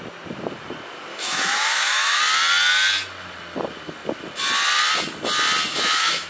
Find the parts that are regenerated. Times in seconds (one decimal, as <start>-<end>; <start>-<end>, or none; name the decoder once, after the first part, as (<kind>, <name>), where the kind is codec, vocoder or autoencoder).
1.1-2.2 (autoencoder, DAC-VAE); 5.7-6.3